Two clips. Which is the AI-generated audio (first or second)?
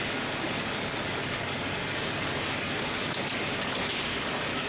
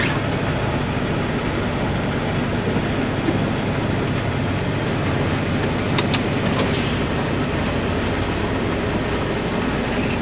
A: first